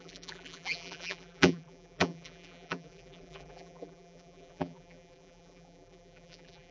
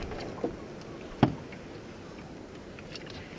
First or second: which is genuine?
second